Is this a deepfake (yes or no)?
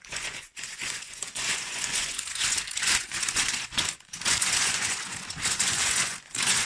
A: yes